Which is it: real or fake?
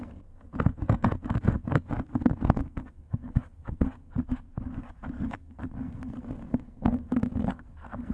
fake